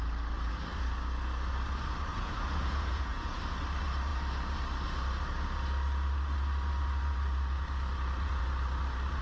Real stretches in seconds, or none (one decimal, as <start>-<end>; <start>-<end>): 0.0-2.1; 3.4-9.2